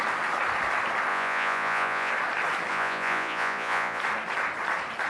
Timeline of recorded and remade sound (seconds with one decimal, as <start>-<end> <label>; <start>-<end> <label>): 0.0-1.1 recorded; 1.1-2.1 remade; 2.1-2.7 recorded; 2.7-4.0 remade; 4.0-5.1 recorded